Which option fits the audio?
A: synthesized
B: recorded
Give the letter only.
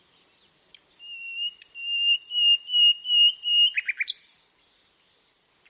B